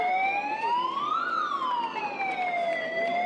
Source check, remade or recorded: recorded